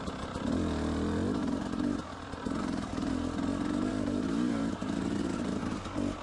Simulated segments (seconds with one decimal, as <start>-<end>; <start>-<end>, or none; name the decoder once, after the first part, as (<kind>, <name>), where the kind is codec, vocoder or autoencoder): 1.4-3.1 (vocoder, BigVGAN v2); 3.9-5.6